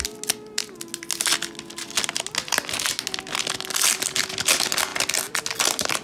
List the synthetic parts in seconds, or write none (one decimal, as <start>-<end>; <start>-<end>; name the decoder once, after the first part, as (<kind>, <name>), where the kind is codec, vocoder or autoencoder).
none